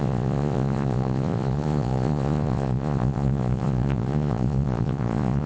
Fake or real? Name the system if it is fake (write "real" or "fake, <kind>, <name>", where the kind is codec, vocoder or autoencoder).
fake, vocoder, Vocos